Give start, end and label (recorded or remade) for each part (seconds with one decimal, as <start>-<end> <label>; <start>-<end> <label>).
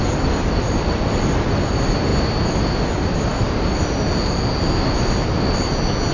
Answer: 0.0-6.1 recorded